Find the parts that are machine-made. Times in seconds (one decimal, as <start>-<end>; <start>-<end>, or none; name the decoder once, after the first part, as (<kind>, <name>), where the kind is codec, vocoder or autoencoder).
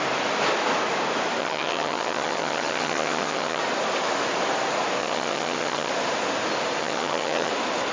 1.4-3.6 (vocoder, HiFi-GAN); 5.0-5.9; 6.8-7.5